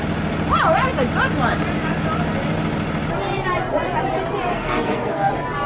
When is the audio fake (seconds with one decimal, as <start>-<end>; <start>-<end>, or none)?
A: 4.5-5.3